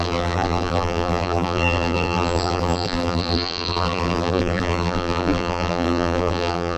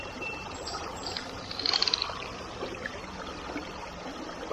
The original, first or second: second